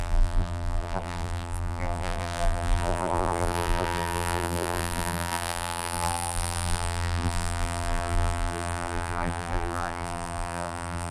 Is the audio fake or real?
fake